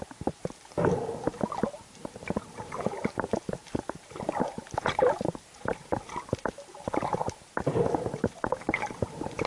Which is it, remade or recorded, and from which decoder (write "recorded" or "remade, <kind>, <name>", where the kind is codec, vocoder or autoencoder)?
remade, vocoder, BigVGAN v2